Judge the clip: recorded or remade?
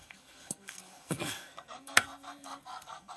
remade